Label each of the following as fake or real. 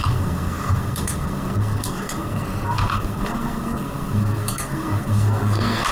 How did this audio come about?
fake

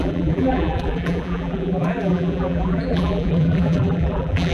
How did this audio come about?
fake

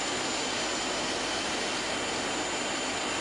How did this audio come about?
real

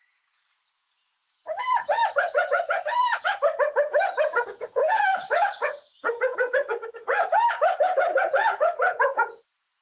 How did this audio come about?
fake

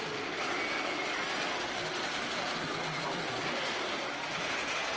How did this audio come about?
real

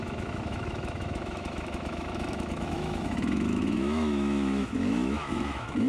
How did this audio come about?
fake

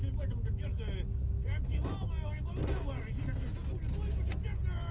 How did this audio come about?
real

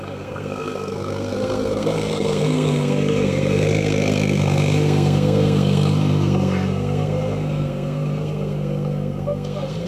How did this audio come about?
fake